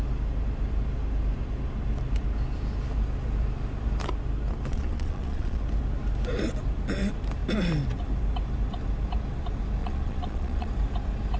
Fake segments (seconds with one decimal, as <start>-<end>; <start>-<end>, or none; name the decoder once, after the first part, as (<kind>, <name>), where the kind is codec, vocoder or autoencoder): 4.7-5.6 (vocoder, Vocos); 9.8-10.7